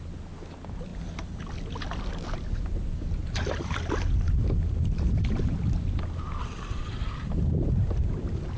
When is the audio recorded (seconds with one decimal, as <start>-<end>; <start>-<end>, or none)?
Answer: 0.0-8.6